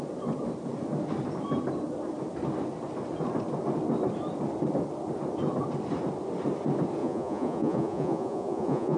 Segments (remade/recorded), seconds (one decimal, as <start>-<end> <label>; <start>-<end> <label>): 0.0-7.0 recorded; 7.0-9.0 remade